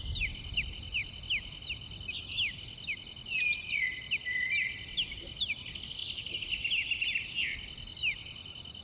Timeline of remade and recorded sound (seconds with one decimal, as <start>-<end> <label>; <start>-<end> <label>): 0.0-1.0 remade; 1.0-3.8 recorded; 3.8-8.8 remade